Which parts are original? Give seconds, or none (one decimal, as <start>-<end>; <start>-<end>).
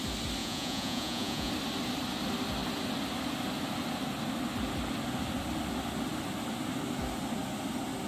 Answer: 0.0-0.4; 1.5-8.1